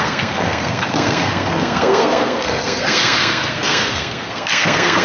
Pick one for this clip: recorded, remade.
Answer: remade